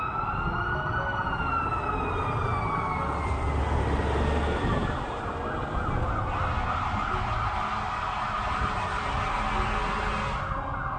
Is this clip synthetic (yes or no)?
no